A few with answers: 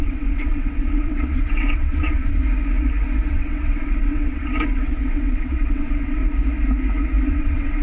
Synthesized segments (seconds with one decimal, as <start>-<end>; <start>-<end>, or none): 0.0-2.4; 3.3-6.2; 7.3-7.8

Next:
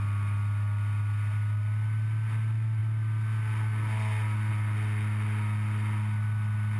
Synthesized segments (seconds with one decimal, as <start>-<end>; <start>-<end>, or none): none

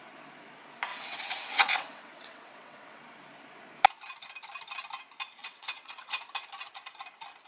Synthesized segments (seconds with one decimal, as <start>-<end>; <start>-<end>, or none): 0.9-3.0; 5.4-6.2